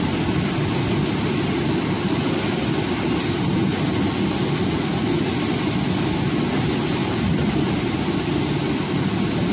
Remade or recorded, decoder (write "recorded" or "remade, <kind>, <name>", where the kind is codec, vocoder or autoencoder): recorded